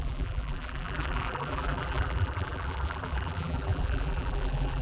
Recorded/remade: remade